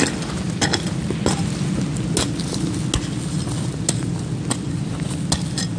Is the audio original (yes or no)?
yes